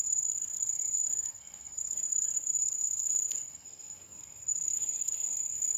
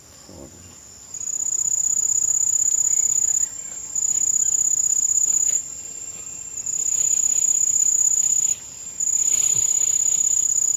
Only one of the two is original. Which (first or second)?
second